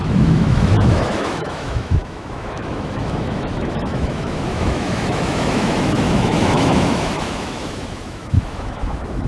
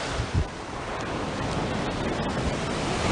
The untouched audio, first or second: second